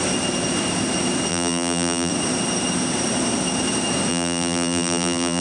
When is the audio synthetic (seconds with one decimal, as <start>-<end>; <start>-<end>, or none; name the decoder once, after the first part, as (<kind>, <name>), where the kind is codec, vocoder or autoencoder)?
1.3-2.1 (vocoder, BigVGAN v2); 4.1-5.4